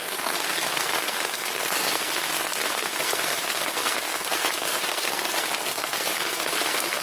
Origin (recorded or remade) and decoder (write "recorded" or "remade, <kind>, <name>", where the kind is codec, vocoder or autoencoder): remade, codec, SNAC